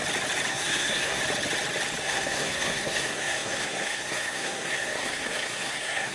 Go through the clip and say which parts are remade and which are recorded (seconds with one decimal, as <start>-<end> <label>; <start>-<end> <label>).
0.0-0.5 recorded; 0.5-1.2 remade; 1.2-2.0 recorded; 2.0-6.1 remade